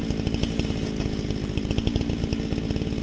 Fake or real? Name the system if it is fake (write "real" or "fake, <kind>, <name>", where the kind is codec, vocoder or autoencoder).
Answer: real